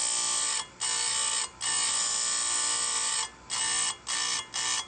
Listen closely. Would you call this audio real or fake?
real